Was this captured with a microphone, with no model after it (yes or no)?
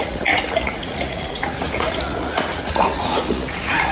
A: no